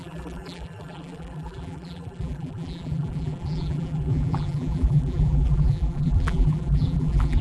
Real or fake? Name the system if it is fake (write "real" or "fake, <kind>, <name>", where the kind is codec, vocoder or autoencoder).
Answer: fake, vocoder, BigVGAN v2